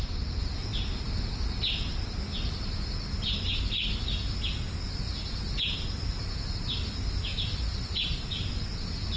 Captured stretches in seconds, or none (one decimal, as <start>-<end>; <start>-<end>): 0.0-7.3; 8.6-9.2